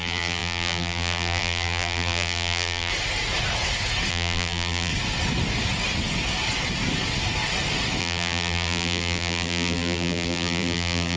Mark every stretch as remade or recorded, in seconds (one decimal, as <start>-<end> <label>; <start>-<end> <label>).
0.0-2.9 remade; 2.9-4.1 recorded; 4.1-4.9 remade; 4.9-8.0 recorded; 8.0-11.2 remade